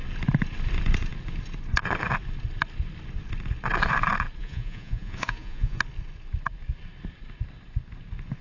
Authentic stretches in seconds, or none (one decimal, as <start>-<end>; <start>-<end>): 0.0-4.4; 5.8-8.4